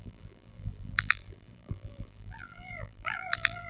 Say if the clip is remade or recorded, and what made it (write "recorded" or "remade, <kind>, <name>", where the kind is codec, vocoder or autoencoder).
remade, vocoder, BigVGAN v2